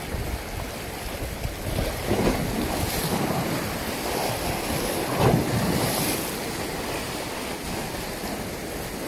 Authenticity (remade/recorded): recorded